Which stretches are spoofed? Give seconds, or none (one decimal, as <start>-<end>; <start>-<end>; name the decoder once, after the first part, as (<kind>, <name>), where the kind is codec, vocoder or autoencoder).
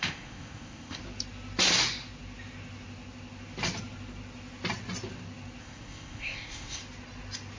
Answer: 0.0-1.0 (codec, ZipCodec); 5.6-6.8